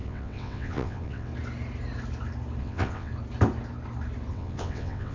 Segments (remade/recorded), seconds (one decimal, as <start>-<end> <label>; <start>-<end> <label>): 0.0-1.3 remade; 1.3-2.6 recorded; 2.6-3.1 remade; 3.1-4.3 recorded; 4.3-5.1 remade